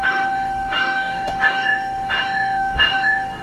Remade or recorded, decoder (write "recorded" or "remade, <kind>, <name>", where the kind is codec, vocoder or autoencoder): remade, autoencoder, DAC-VAE